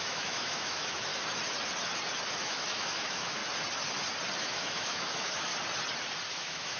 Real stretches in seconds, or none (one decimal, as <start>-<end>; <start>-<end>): 1.1-2.3; 3.4-4.4; 5.5-6.3